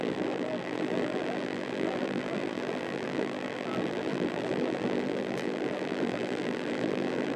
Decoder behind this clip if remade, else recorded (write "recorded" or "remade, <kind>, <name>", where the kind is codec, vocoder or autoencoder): remade, vocoder, BigVGAN v2